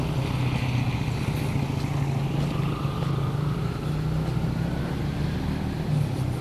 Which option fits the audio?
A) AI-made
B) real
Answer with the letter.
B